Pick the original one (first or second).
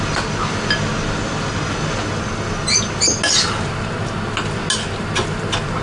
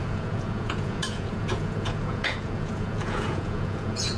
first